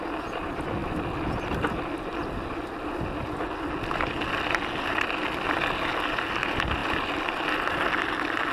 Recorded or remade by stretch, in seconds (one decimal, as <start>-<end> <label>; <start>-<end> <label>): 0.0-8.5 recorded